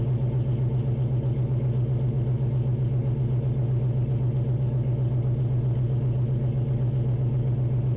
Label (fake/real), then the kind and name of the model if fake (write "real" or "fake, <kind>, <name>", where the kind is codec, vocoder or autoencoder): real